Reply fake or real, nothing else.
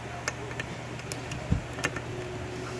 real